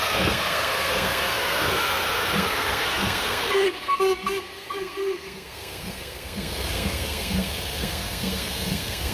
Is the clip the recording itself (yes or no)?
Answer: no